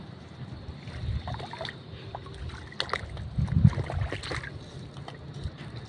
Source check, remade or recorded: recorded